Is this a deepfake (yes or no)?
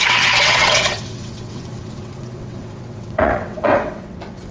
yes